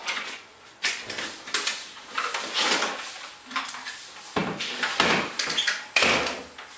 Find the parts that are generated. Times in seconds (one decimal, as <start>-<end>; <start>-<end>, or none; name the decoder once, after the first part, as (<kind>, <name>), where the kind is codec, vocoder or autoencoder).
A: 0.0-1.0 (vocoder, Vocos)